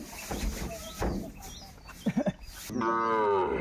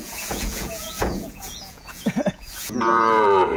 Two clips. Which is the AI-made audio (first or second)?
second